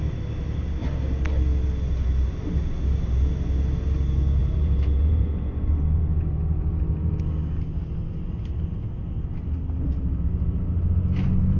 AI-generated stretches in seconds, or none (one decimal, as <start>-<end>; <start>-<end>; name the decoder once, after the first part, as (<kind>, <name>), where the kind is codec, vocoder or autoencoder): 4.4-7.2 (vocoder, Vocos)